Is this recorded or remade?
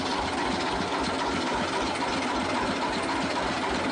recorded